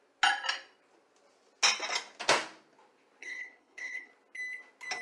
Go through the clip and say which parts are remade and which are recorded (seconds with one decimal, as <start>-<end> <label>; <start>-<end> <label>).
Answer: 0.0-3.2 recorded; 3.2-4.1 remade; 4.1-5.0 recorded